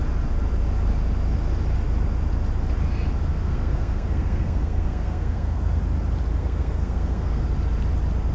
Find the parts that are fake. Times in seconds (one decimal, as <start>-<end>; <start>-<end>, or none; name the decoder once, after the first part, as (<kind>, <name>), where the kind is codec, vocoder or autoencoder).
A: 3.3-5.8 (codec, SNAC); 6.4-7.4